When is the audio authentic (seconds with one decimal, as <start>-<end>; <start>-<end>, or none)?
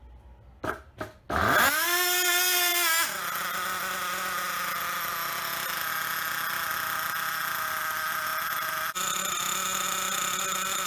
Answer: 0.0-10.9